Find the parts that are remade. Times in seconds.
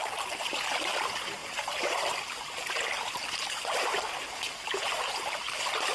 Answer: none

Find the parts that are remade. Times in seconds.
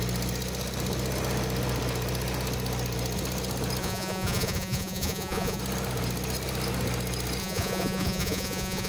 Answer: 3.8-5.6; 7.4-8.9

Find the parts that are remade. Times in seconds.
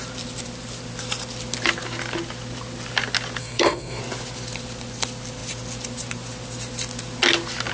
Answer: 3.4-4.0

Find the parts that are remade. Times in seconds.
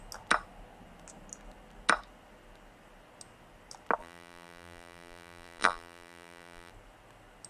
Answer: 4.0-6.7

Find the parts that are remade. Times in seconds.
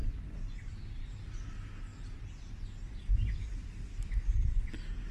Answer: 1.9-5.1